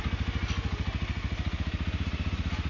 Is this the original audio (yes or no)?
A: yes